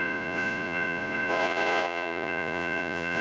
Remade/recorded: remade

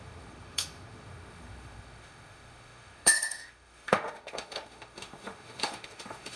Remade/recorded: remade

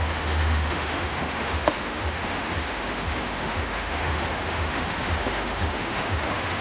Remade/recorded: remade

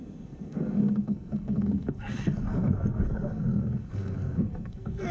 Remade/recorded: remade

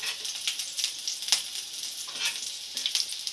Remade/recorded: recorded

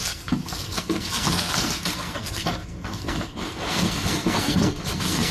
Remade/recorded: remade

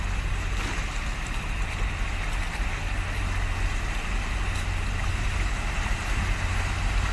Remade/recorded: recorded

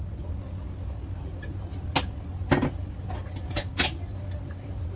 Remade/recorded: recorded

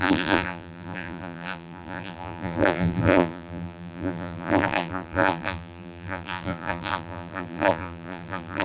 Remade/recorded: remade